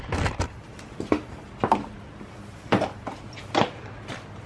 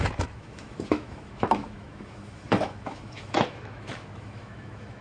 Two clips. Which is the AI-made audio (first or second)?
second